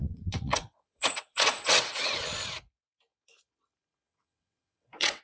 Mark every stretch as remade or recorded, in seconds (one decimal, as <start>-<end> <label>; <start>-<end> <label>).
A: 0.0-2.2 remade; 2.2-4.1 recorded; 4.1-5.2 remade